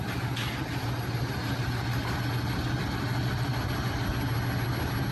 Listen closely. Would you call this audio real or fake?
real